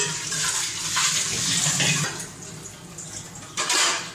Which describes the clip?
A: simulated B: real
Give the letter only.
B